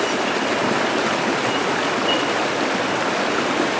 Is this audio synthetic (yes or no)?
no